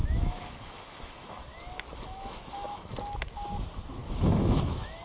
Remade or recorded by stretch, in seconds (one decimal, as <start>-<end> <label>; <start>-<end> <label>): 0.0-3.0 remade; 3.0-4.0 recorded; 4.0-5.0 remade